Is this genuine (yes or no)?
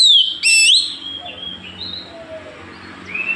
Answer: yes